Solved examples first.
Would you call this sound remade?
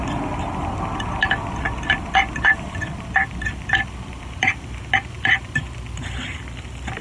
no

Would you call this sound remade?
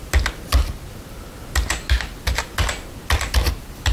no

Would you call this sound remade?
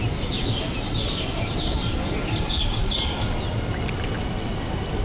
no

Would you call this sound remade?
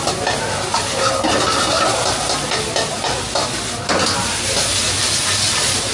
no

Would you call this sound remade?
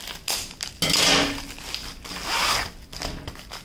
no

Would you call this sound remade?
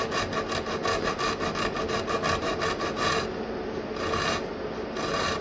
no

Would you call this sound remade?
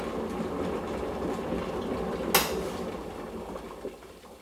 no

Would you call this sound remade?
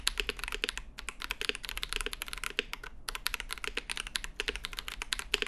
no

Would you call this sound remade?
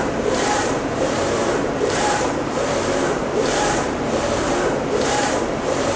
yes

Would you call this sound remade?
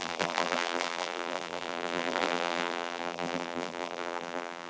yes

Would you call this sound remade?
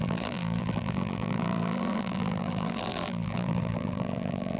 yes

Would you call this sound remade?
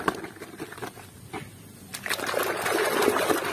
no